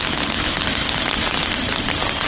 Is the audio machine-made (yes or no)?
no